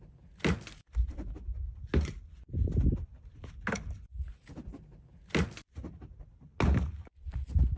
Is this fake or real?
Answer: real